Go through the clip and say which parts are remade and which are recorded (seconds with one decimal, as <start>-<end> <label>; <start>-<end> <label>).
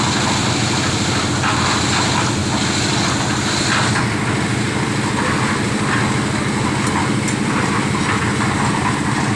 0.0-0.4 recorded; 0.4-1.3 remade; 1.3-2.4 recorded; 2.4-5.9 remade; 5.9-9.4 recorded